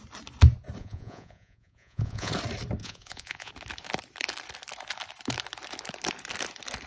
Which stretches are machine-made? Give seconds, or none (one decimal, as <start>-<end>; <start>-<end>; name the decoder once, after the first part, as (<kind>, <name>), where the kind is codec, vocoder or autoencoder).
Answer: 0.8-2.3 (vocoder, Vocos); 2.8-3.5